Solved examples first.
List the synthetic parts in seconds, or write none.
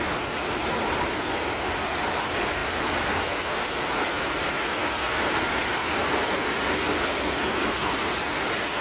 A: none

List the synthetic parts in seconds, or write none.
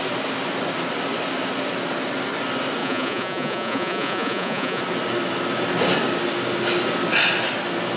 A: 2.8-4.8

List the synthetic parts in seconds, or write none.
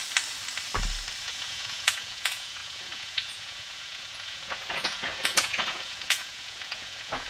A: 1.2-7.3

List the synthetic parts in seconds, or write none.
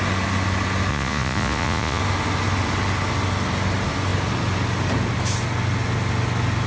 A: 0.9-2.0